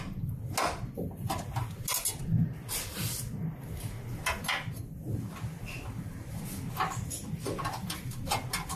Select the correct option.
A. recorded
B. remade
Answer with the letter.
A